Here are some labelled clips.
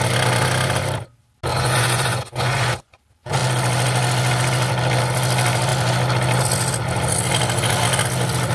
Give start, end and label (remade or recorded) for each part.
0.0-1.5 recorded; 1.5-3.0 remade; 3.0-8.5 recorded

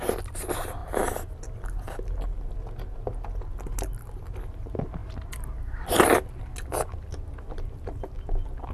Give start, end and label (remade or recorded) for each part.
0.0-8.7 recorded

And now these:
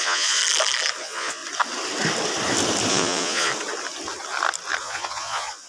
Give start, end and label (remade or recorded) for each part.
0.0-0.4 remade; 0.4-1.0 recorded; 1.0-1.4 remade; 1.4-2.9 recorded; 2.9-3.5 remade; 3.5-4.8 recorded; 4.8-5.7 remade